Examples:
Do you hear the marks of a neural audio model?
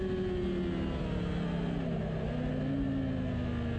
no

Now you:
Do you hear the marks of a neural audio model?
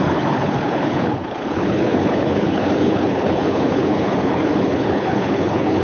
yes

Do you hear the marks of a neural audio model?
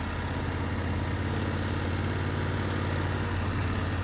no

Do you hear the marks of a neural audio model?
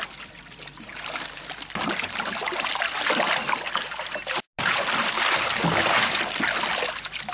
no